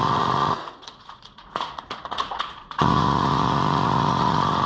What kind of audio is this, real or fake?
fake